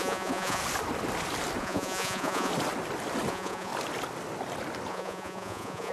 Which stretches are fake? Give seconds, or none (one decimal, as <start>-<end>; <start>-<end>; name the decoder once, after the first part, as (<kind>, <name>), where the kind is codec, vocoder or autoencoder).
0.0-0.6 (vocoder, Vocos); 1.6-2.5; 3.3-3.7; 4.9-5.9